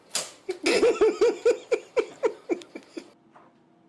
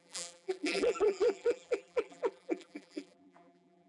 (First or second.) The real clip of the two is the first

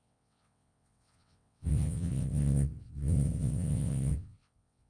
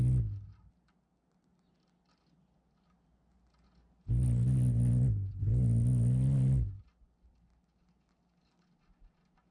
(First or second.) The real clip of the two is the second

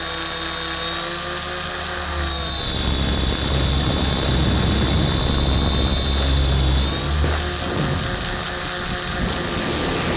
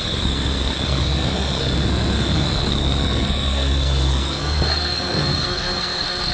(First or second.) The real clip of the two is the first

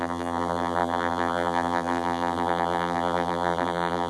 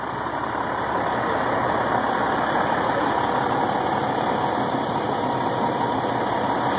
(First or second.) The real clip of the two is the second